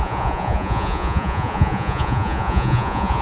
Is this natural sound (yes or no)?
no